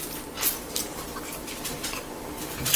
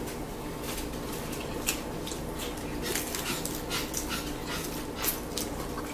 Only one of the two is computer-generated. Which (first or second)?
first